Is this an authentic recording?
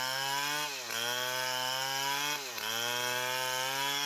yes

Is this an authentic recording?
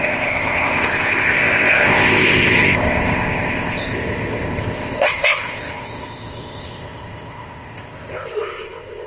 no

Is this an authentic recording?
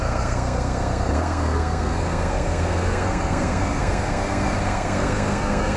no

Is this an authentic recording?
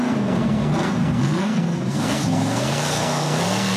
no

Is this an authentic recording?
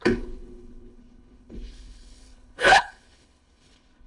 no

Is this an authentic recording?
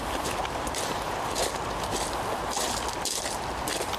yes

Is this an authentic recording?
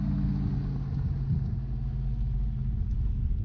yes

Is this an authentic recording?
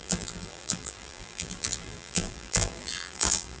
no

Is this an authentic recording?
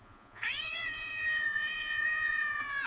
no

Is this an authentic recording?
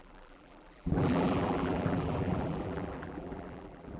no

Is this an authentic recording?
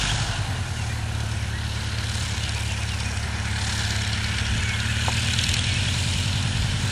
yes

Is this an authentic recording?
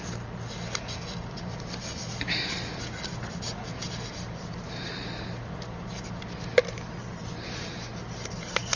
yes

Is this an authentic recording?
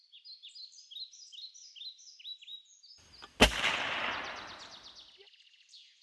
yes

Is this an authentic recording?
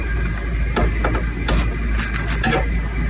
yes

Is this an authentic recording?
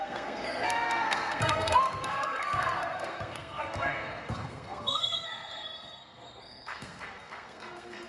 no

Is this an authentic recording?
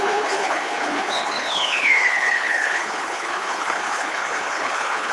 no